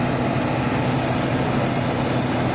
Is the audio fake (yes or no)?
no